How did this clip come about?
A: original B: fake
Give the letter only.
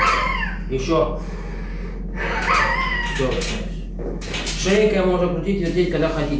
A